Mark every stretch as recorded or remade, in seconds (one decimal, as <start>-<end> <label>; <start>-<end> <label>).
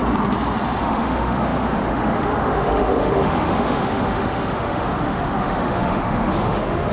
0.0-0.8 recorded; 0.8-6.9 remade